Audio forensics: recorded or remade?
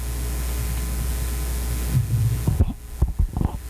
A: recorded